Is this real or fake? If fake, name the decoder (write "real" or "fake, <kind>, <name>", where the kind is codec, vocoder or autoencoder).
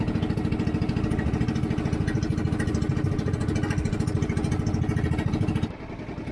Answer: real